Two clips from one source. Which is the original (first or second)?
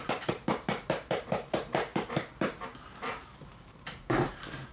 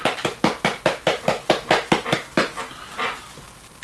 second